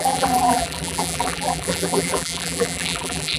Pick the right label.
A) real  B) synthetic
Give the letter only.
B